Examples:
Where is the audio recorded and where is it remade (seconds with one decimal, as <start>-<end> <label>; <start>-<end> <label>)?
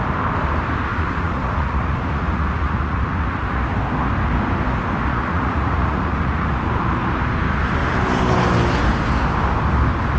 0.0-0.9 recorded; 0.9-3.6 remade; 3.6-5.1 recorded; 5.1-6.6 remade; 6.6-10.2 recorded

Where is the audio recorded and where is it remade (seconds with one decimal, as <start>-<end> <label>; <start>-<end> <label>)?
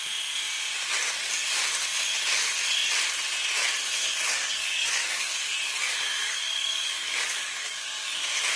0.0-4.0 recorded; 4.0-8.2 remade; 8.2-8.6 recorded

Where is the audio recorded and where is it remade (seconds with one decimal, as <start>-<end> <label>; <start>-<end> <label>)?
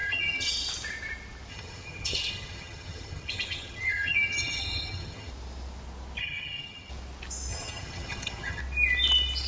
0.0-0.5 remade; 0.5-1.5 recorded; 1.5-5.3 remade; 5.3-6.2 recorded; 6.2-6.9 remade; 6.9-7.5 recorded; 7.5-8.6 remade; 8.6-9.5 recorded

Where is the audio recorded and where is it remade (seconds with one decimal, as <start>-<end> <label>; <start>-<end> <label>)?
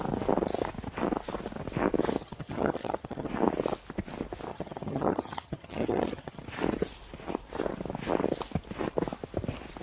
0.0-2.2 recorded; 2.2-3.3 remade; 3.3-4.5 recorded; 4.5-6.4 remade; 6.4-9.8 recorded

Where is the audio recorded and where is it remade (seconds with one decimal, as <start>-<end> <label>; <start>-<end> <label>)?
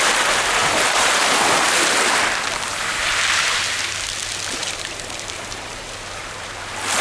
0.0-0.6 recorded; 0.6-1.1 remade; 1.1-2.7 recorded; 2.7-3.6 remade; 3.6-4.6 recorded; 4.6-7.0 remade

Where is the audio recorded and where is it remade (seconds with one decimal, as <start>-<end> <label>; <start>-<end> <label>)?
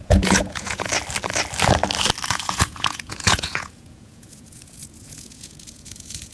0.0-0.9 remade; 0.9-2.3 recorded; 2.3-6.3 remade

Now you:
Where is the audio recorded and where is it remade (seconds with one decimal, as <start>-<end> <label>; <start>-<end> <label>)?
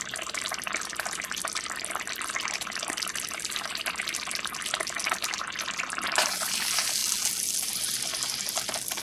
0.0-1.4 recorded; 1.4-3.7 remade; 3.7-9.0 recorded